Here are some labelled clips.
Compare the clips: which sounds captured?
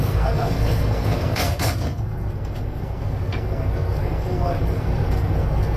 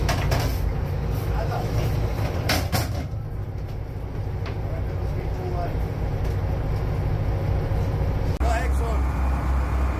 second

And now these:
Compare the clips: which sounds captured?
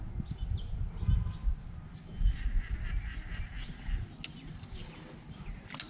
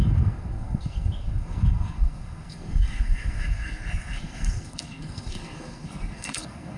first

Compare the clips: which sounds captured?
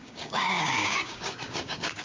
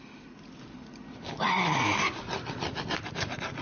second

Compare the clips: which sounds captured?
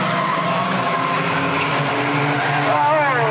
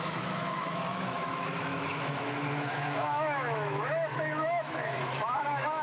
first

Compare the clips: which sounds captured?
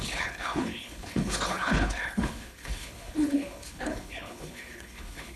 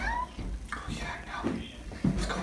second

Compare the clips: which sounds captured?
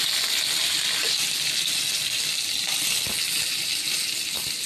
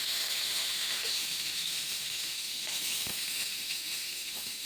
first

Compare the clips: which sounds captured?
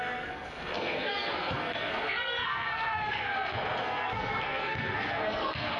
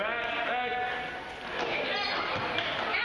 second